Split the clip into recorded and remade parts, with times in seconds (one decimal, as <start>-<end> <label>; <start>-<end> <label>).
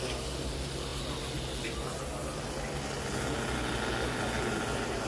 0.0-5.1 recorded